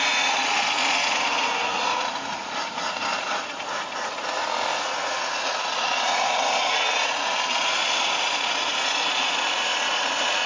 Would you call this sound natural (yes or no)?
no